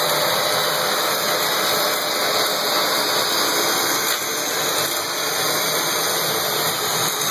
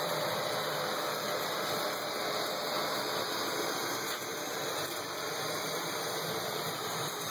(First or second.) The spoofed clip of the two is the second